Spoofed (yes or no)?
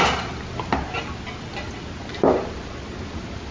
no